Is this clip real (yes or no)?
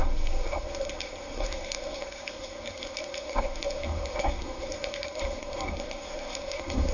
no